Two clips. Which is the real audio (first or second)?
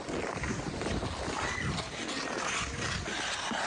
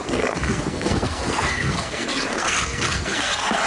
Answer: first